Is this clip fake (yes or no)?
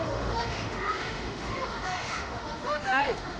yes